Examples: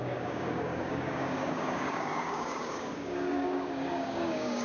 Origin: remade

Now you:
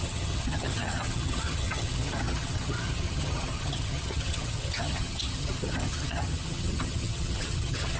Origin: remade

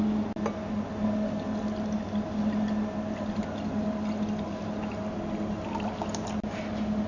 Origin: recorded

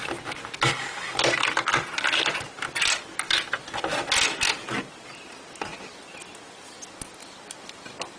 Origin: recorded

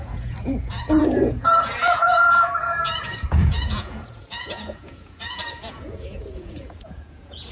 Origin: remade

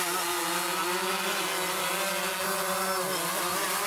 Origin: recorded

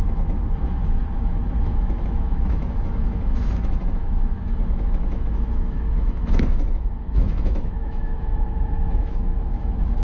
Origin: remade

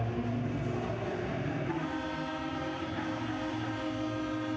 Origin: recorded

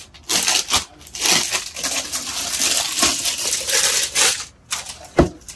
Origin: recorded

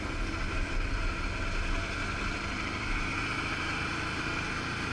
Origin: recorded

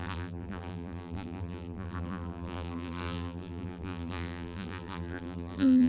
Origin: remade